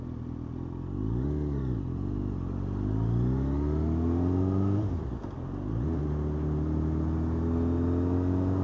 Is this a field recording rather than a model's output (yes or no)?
yes